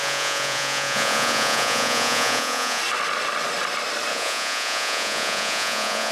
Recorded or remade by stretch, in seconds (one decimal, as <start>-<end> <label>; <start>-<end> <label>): 0.0-2.8 remade; 2.8-4.1 recorded; 4.1-6.1 remade